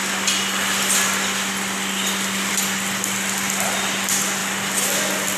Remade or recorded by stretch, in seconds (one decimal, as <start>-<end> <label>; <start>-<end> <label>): 0.0-5.4 recorded